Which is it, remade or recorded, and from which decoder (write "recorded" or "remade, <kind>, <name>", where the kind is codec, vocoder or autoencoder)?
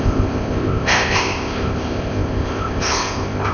remade, codec, ZipCodec